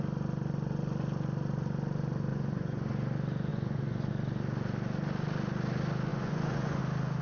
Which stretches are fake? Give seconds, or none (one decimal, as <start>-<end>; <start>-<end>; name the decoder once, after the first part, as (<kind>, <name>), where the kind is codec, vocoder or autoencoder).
2.3-2.9 (vocoder, Vocos); 3.5-4.1; 6.1-6.8